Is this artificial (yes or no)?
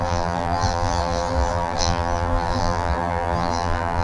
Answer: yes